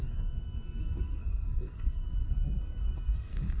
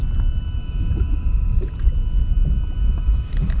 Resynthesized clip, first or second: first